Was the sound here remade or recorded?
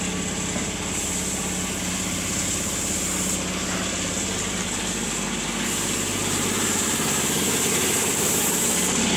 recorded